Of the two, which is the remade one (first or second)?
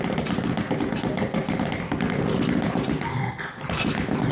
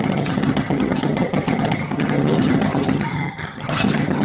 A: second